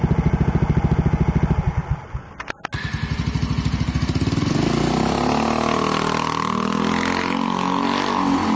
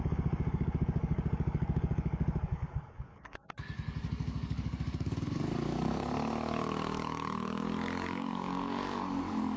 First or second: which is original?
first